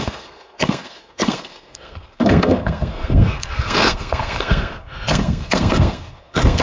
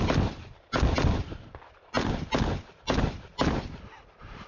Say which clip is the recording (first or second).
second